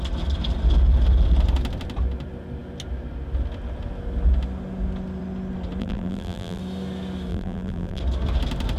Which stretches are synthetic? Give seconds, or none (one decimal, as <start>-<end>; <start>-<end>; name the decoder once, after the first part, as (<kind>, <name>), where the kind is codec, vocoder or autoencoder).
5.8-6.6 (vocoder, BigVGAN v2); 7.3-8.0